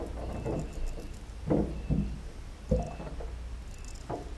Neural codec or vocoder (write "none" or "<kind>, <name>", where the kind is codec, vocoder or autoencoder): none